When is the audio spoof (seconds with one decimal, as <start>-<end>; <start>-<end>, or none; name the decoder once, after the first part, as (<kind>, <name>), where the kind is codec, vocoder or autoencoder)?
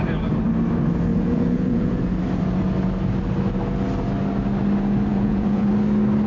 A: 1.1-2.0 (vocoder, Vocos); 5.1-5.7